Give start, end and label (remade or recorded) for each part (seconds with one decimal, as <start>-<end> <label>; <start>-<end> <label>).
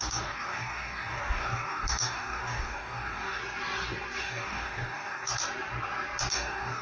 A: 0.0-3.4 remade; 3.4-4.2 recorded; 4.2-5.3 remade; 5.3-6.3 recorded; 6.3-6.8 remade